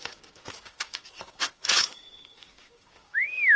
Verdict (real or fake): fake